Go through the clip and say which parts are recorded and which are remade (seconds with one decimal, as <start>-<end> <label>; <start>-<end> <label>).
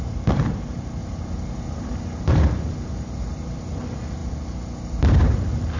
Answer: 0.0-4.2 remade; 4.2-5.0 recorded; 5.0-5.8 remade